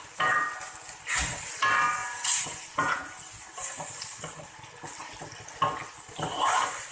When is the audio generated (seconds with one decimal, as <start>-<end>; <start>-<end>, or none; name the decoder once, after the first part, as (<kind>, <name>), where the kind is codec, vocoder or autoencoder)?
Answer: 2.0-3.2 (vocoder, Vocos)